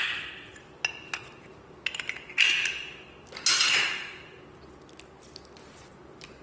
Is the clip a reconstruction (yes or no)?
no